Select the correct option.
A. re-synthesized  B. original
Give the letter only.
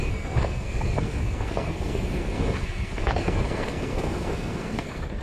A